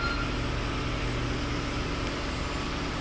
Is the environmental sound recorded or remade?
recorded